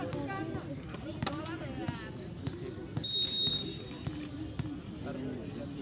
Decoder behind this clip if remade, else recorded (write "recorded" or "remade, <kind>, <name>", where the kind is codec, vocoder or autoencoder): recorded